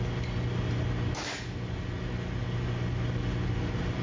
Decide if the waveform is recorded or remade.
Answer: recorded